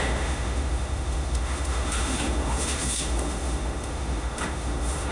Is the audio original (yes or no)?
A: no